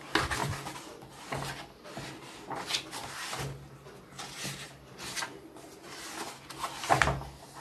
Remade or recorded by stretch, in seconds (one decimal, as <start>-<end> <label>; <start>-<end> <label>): 0.0-0.4 recorded; 0.4-1.2 remade; 1.2-1.9 recorded; 1.9-2.5 remade; 2.5-3.0 recorded; 3.0-7.0 remade; 7.0-7.6 recorded